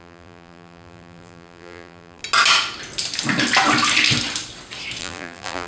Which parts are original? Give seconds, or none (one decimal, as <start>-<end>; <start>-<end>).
2.2-5.0